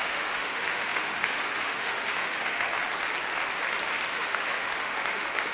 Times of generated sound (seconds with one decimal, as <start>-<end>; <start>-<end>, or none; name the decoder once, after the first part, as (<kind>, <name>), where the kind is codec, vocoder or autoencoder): 0.0-2.7 (autoencoder, DAC-VAE); 3.9-5.5